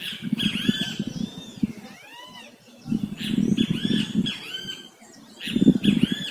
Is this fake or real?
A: real